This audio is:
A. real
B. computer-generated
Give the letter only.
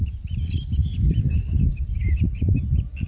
B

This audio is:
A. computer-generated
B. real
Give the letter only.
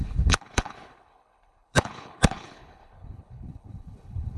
A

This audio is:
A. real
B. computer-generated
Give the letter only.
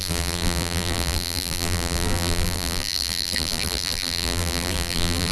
B